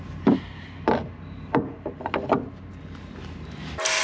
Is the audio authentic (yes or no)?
yes